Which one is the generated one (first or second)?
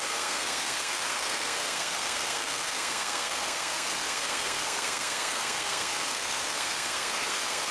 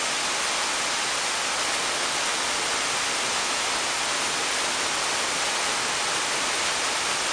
first